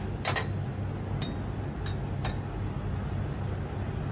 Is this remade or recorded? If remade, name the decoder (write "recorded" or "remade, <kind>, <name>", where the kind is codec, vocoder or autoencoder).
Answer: recorded